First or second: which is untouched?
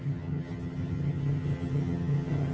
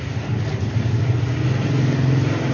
second